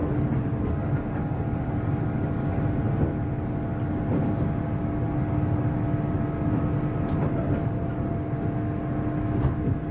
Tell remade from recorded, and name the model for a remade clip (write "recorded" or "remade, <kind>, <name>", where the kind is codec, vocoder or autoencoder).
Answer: recorded